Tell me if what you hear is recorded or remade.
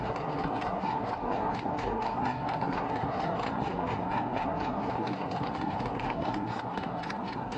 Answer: remade